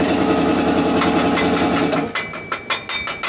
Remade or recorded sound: recorded